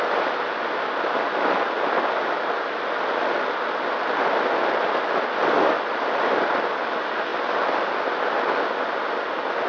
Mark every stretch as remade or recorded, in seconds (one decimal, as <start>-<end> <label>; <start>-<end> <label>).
0.0-9.7 recorded